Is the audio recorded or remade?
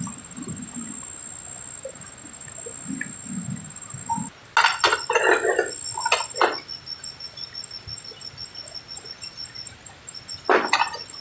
recorded